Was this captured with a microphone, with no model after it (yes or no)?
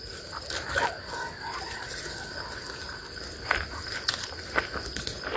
yes